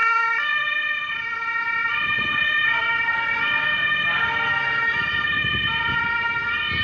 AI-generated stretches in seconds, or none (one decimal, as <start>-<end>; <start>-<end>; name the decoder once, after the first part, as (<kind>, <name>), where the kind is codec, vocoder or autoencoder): none